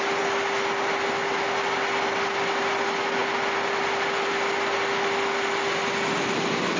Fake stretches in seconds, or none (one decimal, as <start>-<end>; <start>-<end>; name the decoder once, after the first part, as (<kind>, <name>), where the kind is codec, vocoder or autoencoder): none